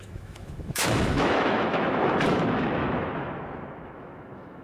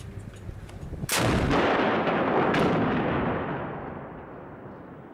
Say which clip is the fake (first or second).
first